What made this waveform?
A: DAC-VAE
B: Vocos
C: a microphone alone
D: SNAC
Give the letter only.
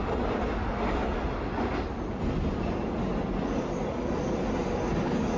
C